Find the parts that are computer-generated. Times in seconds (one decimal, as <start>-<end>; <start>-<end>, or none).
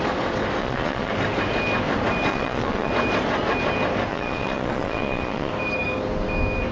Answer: 0.6-1.1; 2.3-2.9; 4.1-5.5